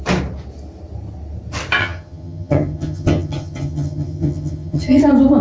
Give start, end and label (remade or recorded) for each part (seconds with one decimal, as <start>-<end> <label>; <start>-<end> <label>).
0.0-1.8 recorded; 1.8-5.0 remade; 5.0-5.4 recorded